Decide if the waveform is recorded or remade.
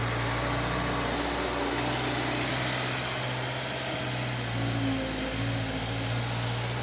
recorded